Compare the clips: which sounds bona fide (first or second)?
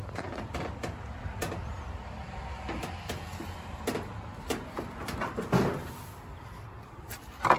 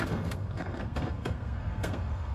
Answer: first